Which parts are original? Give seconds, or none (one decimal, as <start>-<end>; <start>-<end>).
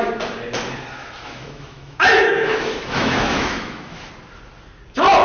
0.0-1.0; 4.1-5.2